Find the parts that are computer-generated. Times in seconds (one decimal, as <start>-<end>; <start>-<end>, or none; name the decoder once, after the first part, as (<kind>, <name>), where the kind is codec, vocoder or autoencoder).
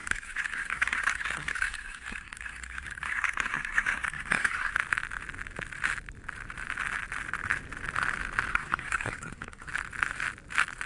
0.0-4.7 (codec, SNAC); 8.5-9.7